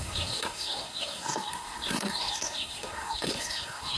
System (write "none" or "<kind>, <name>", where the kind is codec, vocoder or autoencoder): codec, SNAC